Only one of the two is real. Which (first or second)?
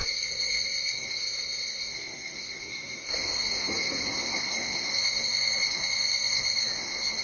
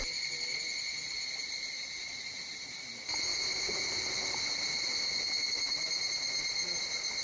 second